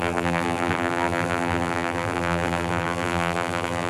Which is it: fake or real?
fake